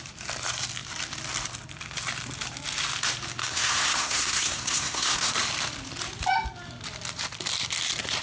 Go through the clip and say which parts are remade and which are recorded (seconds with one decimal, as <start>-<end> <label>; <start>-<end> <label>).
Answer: 0.0-3.4 recorded; 3.4-5.3 remade; 5.3-8.2 recorded

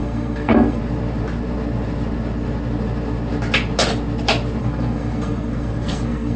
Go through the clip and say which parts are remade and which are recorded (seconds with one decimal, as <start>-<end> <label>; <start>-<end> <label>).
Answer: 0.0-0.8 remade; 0.8-4.6 recorded; 4.6-6.4 remade

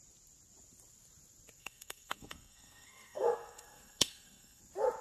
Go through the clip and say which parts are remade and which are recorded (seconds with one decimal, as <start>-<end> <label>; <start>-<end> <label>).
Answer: 0.0-1.6 recorded; 1.6-4.6 remade; 4.6-5.0 recorded

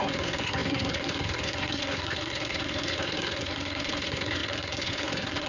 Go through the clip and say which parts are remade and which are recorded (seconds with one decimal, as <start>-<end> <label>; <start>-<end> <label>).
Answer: 0.0-5.5 remade

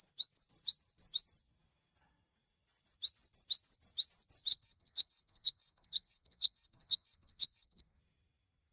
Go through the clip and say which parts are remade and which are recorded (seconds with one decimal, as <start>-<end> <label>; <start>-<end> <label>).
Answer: 0.0-4.5 recorded; 4.5-8.0 remade; 8.0-8.7 recorded

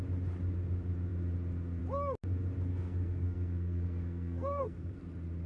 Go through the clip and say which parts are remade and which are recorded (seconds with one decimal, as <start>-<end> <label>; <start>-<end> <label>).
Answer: 0.0-2.7 recorded; 2.7-5.0 remade; 5.0-5.5 recorded